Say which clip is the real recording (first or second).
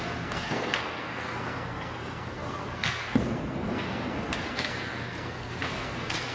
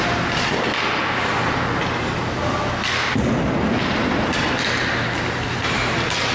second